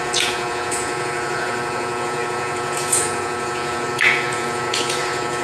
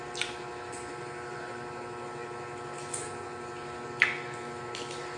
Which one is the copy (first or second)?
first